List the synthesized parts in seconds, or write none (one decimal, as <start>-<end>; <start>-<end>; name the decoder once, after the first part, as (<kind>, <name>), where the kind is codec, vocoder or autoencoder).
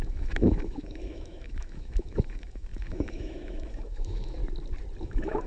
0.0-4.4 (autoencoder, DAC-VAE); 5.0-5.5